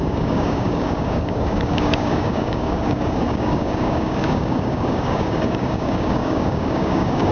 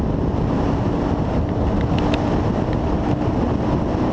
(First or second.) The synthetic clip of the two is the first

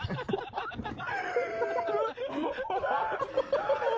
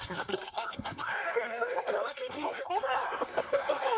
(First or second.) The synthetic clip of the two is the second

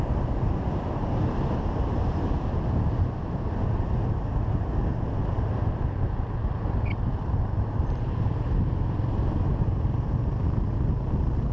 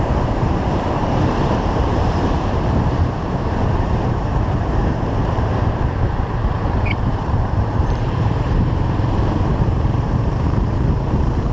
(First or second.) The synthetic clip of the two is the second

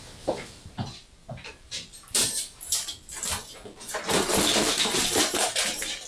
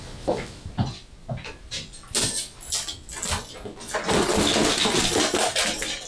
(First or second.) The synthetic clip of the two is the first